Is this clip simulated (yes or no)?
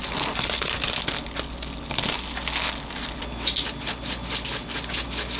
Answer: no